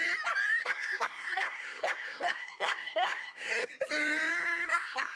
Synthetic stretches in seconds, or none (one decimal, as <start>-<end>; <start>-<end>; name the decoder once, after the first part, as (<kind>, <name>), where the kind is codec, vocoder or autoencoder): 0.6-3.7 (codec, SNAC); 4.3-5.2